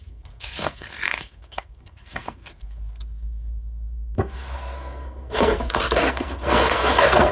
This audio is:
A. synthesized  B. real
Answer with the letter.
A